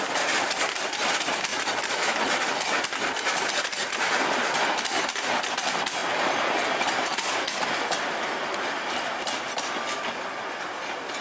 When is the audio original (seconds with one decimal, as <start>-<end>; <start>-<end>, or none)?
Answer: 0.0-6.0; 7.5-11.2